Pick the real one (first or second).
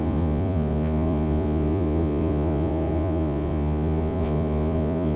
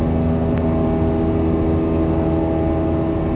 second